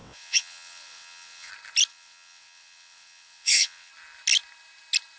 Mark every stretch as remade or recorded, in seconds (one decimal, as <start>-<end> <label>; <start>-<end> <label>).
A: 0.0-1.5 remade; 1.5-1.9 recorded; 1.9-3.9 remade; 3.9-5.2 recorded